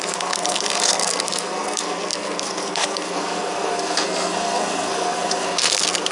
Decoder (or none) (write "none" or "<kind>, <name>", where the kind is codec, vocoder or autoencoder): codec, SNAC